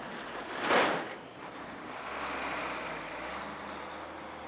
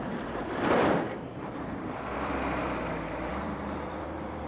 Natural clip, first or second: first